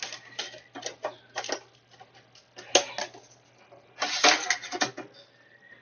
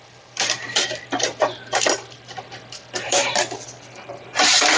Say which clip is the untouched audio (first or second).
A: first